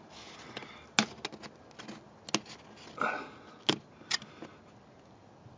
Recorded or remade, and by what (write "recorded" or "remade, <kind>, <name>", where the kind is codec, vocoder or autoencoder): recorded